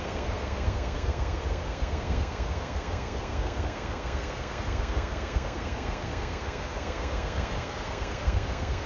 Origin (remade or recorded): remade